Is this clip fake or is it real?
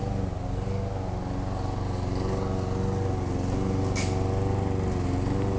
real